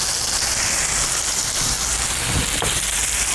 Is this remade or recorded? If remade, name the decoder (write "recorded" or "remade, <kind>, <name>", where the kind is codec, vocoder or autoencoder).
recorded